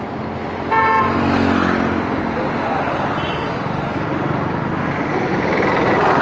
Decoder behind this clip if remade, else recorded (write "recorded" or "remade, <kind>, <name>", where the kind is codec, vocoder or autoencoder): recorded